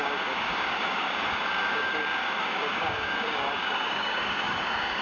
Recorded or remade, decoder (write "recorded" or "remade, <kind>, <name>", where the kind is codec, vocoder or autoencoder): remade, codec, DAC